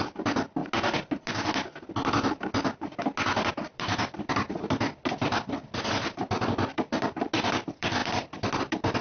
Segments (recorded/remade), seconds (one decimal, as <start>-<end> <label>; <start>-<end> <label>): 0.0-0.6 remade; 0.6-3.5 recorded; 3.5-9.0 remade